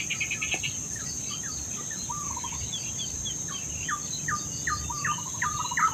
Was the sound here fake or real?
fake